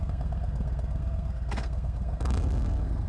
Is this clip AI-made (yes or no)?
yes